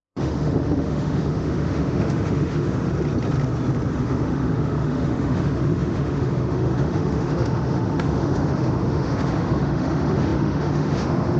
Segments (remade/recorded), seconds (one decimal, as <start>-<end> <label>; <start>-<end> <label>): 0.0-2.9 remade; 2.9-3.9 recorded; 3.9-11.4 remade